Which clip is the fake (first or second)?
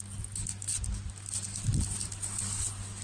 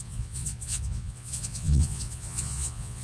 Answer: second